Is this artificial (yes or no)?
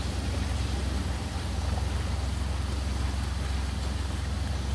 no